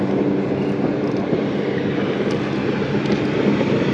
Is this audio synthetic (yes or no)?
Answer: no